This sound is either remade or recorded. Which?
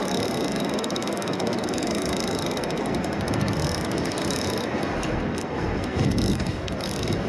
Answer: remade